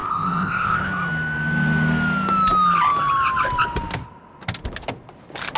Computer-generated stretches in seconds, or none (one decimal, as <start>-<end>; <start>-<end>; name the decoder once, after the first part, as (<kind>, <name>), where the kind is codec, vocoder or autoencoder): 0.0-0.8 (codec, ZipCodec)